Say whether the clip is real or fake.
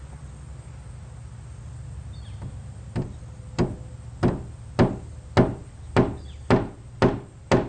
real